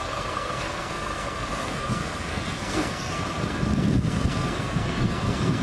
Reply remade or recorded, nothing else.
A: remade